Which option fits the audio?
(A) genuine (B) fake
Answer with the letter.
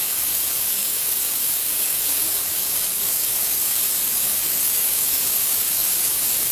B